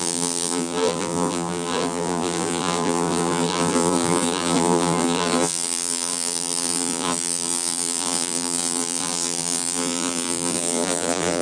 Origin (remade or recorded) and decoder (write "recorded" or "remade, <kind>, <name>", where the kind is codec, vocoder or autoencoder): remade, vocoder, BigVGAN v2